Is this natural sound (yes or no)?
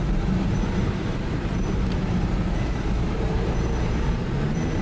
no